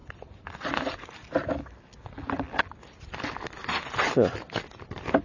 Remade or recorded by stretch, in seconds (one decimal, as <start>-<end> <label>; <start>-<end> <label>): 0.0-5.2 recorded